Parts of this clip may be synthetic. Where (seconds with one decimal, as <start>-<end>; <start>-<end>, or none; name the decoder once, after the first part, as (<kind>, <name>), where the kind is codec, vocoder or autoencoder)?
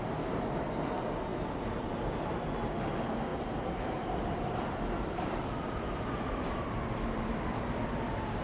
1.3-2.1 (vocoder, BigVGAN v2); 3.3-8.4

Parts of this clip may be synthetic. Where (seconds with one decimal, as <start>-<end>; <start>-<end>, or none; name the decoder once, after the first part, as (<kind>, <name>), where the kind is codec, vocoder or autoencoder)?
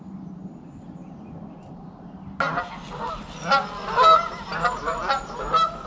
none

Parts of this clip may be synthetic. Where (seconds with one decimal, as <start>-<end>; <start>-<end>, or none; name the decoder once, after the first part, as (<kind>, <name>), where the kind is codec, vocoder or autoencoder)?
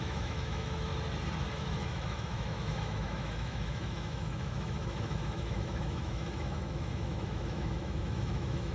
0.0-0.9 (autoencoder, DAC-VAE); 1.5-8.7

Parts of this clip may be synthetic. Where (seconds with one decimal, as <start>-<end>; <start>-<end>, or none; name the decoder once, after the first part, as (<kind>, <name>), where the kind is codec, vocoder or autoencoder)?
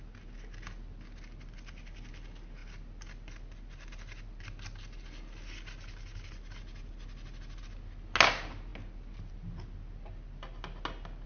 none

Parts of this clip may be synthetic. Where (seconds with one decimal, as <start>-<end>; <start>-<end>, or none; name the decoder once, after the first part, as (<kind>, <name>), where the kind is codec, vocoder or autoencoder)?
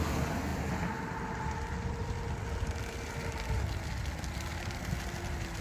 none